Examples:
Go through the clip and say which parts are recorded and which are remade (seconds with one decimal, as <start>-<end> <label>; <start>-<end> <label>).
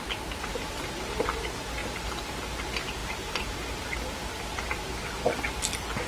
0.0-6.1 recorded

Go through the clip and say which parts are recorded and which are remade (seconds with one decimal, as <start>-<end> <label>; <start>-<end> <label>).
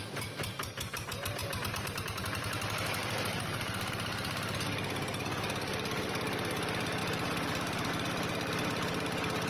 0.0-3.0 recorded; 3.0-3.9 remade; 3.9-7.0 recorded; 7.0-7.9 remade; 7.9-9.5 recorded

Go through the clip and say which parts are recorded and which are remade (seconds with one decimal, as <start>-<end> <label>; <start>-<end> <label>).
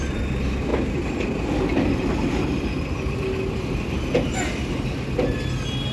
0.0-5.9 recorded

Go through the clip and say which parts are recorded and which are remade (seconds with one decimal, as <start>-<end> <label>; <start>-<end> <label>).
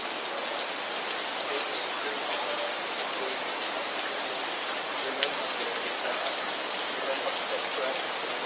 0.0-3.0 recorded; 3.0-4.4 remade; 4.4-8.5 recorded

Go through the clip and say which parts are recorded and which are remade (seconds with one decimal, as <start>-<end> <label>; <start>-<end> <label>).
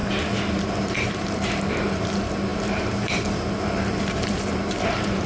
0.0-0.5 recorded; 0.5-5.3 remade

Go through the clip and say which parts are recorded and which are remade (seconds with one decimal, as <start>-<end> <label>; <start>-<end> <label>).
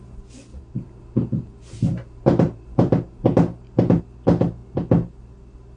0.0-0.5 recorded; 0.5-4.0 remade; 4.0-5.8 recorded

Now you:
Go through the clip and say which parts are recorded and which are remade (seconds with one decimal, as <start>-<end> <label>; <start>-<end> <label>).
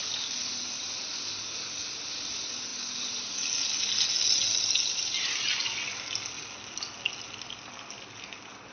0.0-8.7 recorded